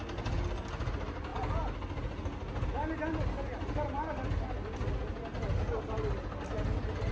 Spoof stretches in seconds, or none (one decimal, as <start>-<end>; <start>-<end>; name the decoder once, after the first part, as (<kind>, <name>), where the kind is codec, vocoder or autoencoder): none